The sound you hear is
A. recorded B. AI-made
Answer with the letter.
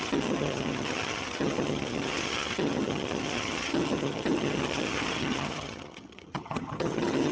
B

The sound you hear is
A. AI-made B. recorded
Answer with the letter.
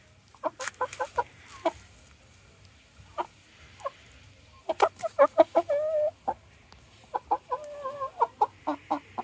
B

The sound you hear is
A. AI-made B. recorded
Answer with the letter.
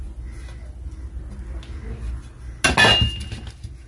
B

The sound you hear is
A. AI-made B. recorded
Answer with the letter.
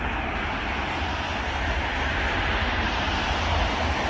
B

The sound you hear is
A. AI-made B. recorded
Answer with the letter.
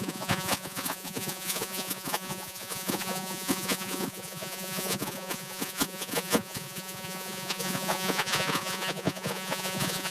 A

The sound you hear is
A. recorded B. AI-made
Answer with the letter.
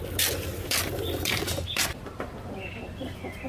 B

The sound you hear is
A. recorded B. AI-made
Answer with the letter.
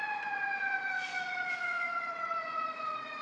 B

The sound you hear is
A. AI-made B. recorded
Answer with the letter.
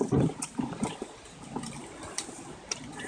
B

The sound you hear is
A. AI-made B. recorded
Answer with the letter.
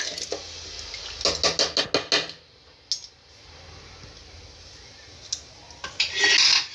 B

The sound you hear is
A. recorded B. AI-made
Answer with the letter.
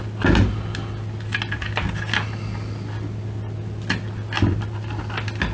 A